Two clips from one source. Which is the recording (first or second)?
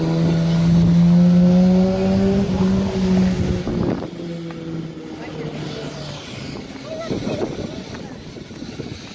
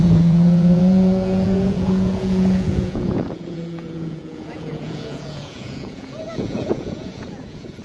first